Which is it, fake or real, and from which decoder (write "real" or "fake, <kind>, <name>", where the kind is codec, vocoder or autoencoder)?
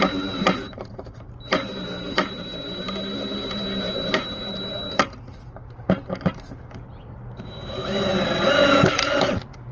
real